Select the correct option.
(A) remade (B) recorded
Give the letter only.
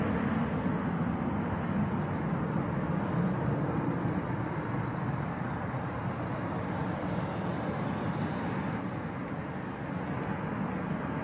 B